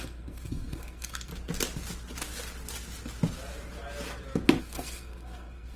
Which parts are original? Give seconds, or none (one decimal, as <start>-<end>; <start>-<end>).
1.3-4.6